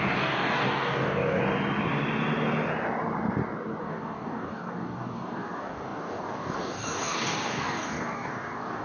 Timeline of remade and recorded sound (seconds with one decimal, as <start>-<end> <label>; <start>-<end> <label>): 0.0-1.4 remade; 1.4-3.8 recorded; 3.8-8.8 remade